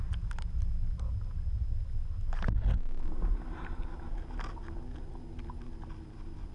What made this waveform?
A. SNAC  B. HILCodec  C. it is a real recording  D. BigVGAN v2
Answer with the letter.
C